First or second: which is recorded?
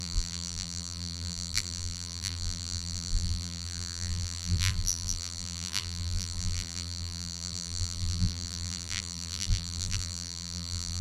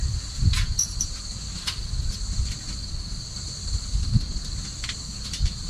second